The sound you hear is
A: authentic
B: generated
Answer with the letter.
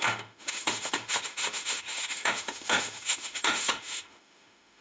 B